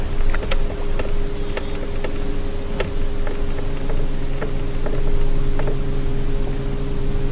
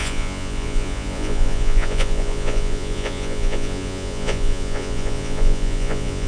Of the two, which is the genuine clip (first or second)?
first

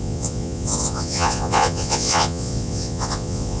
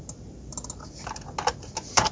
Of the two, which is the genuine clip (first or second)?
second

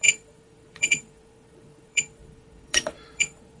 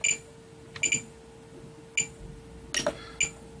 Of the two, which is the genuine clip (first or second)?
second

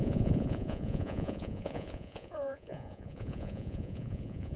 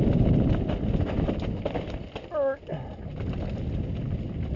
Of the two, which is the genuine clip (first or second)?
second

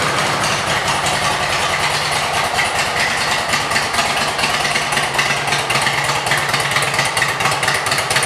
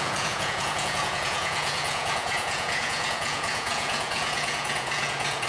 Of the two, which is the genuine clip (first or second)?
first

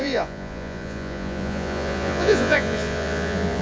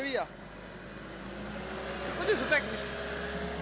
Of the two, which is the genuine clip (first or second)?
second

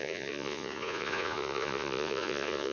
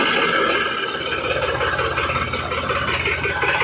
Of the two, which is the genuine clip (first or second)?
second